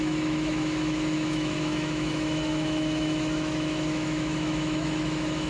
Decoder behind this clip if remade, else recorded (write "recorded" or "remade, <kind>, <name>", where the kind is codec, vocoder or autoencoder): remade, autoencoder, DAC-VAE